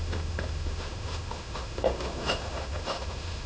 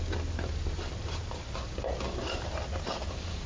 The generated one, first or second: first